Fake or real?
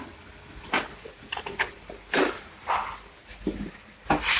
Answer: fake